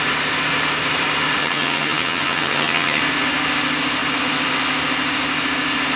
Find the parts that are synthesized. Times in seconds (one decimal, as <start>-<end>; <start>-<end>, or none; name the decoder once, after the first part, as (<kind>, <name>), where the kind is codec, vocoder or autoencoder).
1.4-3.0 (vocoder, HiFi-GAN)